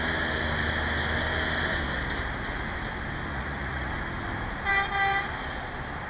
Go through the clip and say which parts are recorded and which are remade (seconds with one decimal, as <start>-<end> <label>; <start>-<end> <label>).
0.0-3.3 recorded; 3.3-3.9 remade; 3.9-6.1 recorded